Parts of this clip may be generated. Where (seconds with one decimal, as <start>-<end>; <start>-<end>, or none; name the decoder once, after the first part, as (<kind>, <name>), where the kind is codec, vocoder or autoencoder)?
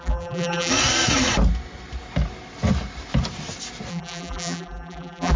0.0-0.7 (vocoder, BigVGAN v2); 3.9-5.4